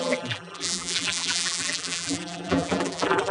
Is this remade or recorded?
remade